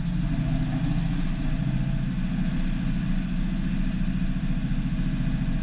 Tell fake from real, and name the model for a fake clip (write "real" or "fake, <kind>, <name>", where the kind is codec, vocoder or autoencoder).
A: real